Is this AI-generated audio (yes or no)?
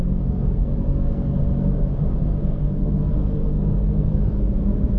yes